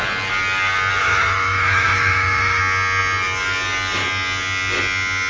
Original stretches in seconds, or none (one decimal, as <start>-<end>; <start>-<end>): 0.0-1.0; 2.6-5.3